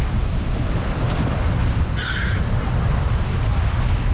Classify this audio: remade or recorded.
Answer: recorded